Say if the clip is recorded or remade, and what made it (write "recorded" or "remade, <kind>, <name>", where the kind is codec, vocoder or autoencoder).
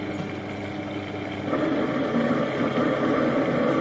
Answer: recorded